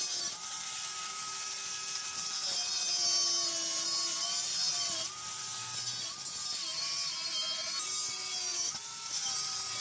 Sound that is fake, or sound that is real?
real